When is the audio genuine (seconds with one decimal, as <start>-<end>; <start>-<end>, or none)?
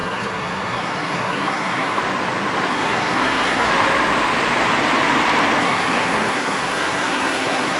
2.0-2.7; 3.7-5.6